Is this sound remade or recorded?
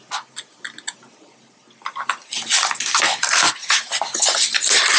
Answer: recorded